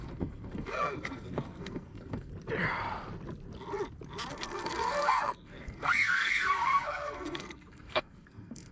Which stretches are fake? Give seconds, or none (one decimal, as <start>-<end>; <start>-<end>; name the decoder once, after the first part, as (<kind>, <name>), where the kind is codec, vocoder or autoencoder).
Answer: 0.0-2.3 (codec, SNAC); 4.3-8.7